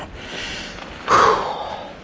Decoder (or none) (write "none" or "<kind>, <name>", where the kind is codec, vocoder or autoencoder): none